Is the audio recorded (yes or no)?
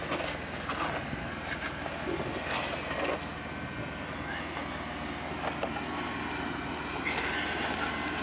yes